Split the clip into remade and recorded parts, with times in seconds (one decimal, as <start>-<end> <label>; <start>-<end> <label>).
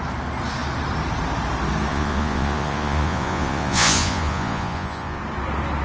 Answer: 0.0-1.9 recorded; 1.9-5.2 remade; 5.2-5.8 recorded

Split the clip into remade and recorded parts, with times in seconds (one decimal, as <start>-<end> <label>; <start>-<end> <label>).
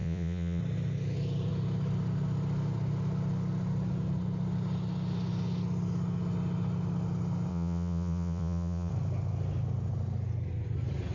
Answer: 0.0-0.6 remade; 0.6-7.5 recorded; 7.5-8.9 remade; 8.9-11.1 recorded